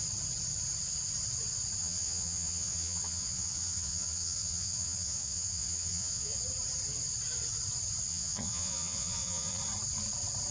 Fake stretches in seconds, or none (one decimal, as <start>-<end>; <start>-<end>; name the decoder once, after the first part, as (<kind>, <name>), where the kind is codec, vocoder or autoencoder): 1.8-6.4 (vocoder, Vocos); 8.1-9.6